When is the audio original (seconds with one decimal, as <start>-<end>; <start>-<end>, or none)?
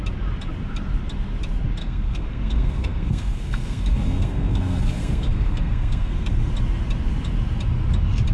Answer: 0.0-1.8; 6.5-8.3